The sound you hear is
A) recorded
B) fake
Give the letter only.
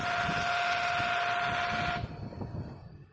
A